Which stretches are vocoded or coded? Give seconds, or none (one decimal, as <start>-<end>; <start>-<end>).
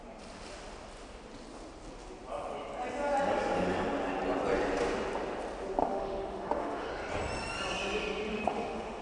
5.8-6.9; 8.3-9.0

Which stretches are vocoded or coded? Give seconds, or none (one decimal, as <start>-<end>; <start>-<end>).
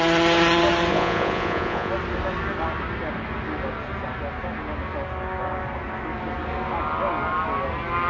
0.9-1.9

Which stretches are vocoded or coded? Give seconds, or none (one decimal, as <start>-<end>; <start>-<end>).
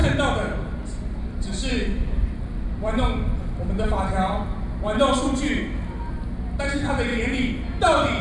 1.5-6.1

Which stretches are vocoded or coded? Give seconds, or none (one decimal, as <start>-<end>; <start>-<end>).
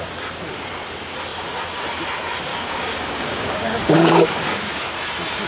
2.5-4.7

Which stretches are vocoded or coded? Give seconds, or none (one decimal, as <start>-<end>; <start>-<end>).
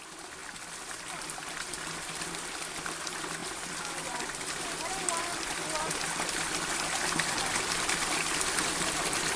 none